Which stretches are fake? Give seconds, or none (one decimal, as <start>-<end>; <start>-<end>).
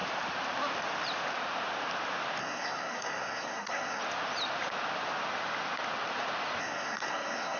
2.4-4.0; 6.6-7.6